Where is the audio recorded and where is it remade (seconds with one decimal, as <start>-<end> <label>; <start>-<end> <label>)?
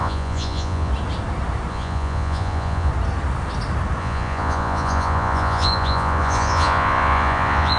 0.0-0.9 remade; 0.9-1.7 recorded; 1.7-2.9 remade; 2.9-4.0 recorded; 4.0-7.8 remade